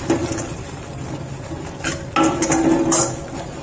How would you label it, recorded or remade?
recorded